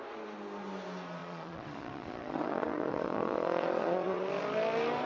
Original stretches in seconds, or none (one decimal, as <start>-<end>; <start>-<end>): 0.0-1.2; 4.3-5.1